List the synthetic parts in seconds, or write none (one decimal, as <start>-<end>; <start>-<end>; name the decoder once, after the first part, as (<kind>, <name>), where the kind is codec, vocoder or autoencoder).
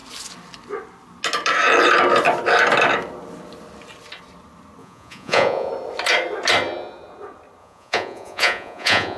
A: 4.8-5.7 (vocoder, Vocos); 7.6-9.2